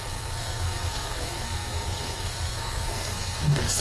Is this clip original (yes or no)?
no